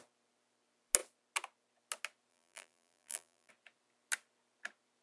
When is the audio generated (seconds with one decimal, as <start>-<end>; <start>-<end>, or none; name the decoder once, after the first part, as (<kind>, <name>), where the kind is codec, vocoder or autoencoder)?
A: 2.3-3.5 (vocoder, BigVGAN v2)